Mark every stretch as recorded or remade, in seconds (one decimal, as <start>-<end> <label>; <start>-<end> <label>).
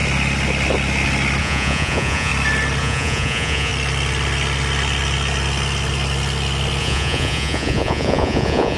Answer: 0.0-1.4 recorded; 1.4-2.3 remade; 2.3-2.8 recorded; 2.8-3.7 remade; 3.7-6.8 recorded; 6.8-8.8 remade